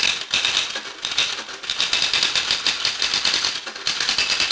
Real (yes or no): yes